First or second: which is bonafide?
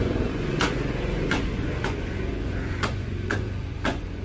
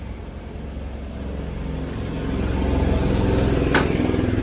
second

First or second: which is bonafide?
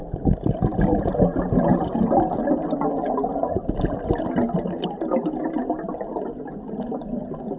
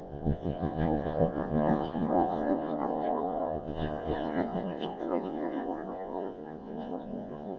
first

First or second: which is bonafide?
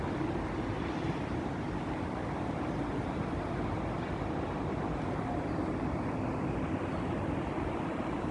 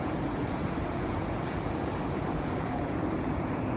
first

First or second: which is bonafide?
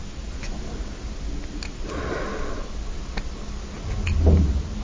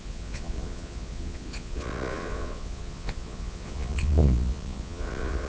first